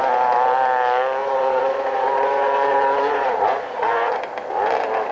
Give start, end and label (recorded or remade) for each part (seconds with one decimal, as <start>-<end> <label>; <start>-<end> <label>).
0.0-1.2 recorded; 1.2-4.3 remade; 4.3-5.1 recorded